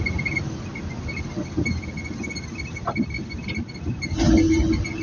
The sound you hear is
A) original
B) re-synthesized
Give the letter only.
A